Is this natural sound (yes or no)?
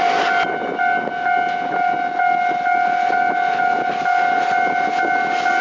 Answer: yes